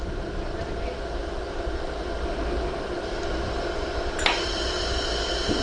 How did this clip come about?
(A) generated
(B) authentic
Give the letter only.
B